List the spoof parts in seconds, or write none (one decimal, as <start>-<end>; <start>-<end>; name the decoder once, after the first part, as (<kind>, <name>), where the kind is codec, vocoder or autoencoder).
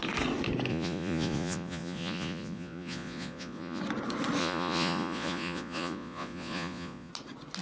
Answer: 0.7-3.8 (vocoder, Vocos); 4.4-7.1